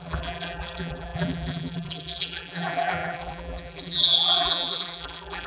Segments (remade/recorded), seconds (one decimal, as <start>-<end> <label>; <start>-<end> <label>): 0.0-5.5 remade